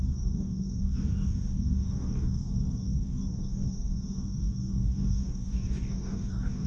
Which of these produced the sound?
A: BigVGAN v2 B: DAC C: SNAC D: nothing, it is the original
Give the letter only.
B